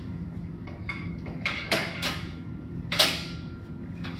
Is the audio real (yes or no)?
no